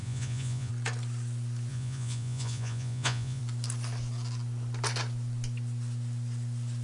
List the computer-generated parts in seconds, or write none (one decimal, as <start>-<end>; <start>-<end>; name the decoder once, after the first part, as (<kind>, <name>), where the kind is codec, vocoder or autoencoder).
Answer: 0.0-0.7 (vocoder, Vocos); 1.7-3.4